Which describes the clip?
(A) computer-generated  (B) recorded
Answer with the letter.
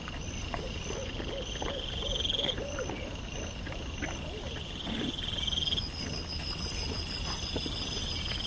B